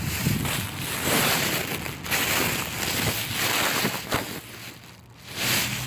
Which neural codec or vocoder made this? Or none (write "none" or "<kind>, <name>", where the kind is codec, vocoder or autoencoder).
none